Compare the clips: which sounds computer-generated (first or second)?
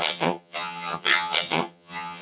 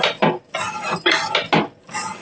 first